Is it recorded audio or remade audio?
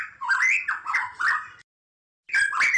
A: recorded